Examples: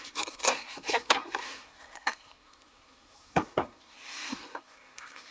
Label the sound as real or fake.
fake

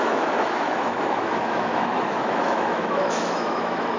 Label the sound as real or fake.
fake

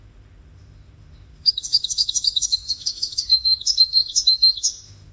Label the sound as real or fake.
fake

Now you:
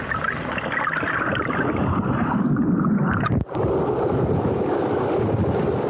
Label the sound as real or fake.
real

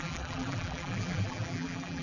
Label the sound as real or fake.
fake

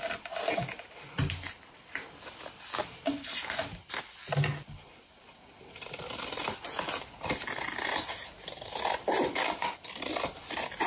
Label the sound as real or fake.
real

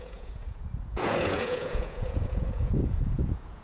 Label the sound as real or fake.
fake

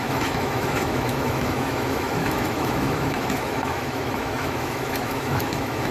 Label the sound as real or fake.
fake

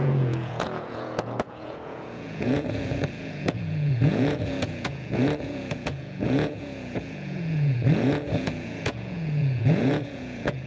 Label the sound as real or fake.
fake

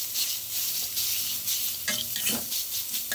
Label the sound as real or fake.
real